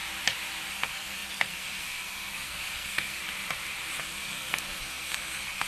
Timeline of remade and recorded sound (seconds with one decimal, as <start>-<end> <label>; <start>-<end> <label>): 0.0-0.7 recorded; 0.7-3.2 remade; 3.2-4.0 recorded; 4.0-5.7 remade